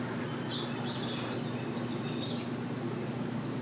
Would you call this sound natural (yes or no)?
yes